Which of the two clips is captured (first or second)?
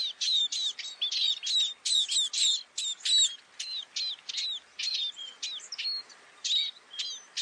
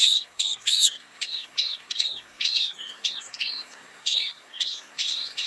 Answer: first